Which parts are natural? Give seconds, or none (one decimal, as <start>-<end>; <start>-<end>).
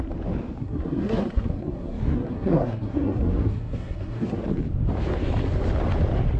0.0-0.6; 4.4-6.4